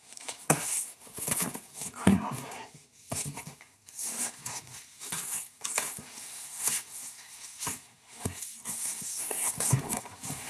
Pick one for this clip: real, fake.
fake